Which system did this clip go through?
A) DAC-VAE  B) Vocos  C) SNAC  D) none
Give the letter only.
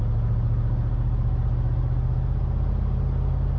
D